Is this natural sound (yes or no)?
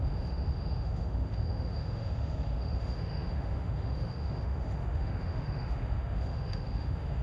no